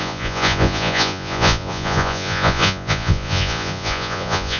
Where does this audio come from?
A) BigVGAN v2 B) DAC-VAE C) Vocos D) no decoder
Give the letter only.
C